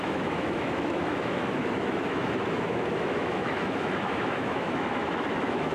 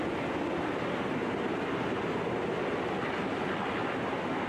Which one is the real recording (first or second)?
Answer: second